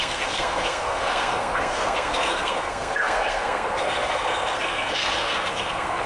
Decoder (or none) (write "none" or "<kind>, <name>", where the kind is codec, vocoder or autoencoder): codec, SNAC